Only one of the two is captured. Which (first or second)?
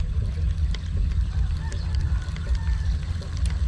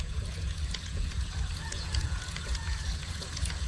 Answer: first